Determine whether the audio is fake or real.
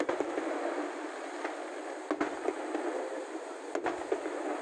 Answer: real